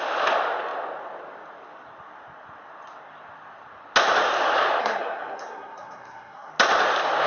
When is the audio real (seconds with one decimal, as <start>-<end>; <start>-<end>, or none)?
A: 0.0-4.8; 6.5-7.3